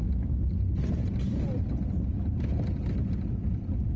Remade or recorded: recorded